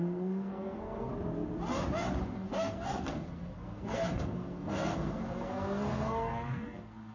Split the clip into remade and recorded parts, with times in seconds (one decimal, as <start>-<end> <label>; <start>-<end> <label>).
0.0-1.1 remade; 1.1-2.2 recorded; 2.2-7.1 remade